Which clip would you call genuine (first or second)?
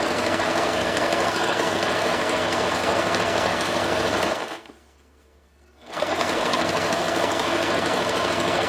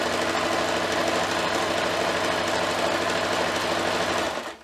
second